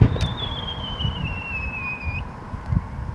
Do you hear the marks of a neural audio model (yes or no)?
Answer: no